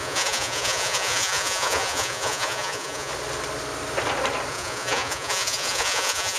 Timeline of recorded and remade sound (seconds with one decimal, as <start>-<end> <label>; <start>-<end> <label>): 0.0-3.1 remade; 3.1-4.5 recorded; 4.5-6.4 remade